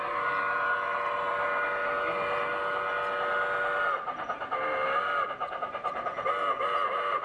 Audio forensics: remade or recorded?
recorded